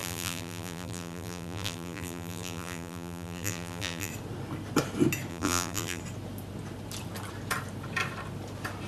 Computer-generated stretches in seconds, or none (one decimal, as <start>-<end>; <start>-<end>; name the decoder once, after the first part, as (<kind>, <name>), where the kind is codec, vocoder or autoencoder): 0.0-4.1 (vocoder, BigVGAN v2); 5.3-6.0